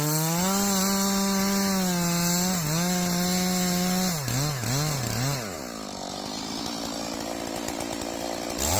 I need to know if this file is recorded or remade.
recorded